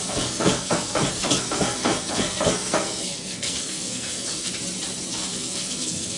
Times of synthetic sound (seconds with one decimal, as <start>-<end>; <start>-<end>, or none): 0.0-4.5; 5.1-6.2